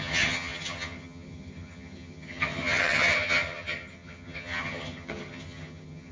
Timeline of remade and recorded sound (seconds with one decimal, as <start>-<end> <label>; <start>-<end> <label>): 0.0-6.1 remade